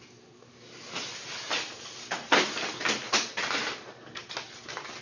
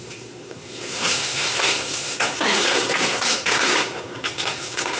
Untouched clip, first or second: first